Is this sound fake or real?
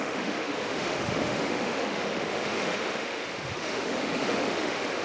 fake